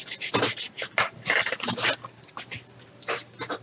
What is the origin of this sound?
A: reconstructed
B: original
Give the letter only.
B